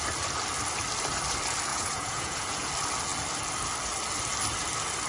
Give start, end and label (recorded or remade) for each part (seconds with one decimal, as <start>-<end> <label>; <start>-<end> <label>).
0.0-1.7 recorded; 1.7-2.7 remade; 2.7-5.1 recorded